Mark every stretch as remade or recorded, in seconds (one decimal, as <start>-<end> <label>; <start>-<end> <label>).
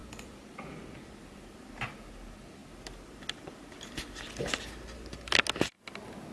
0.0-6.3 recorded